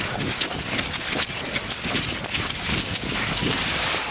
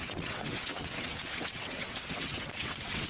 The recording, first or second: first